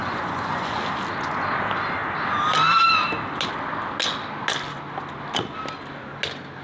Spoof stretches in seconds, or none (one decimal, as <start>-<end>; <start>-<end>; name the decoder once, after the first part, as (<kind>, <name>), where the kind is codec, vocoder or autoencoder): 0.0-0.8 (vocoder, Vocos)